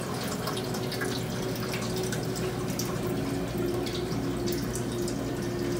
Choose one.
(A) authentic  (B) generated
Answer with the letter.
A